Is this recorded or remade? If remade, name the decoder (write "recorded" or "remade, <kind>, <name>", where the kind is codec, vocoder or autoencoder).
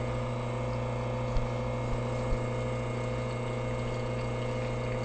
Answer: recorded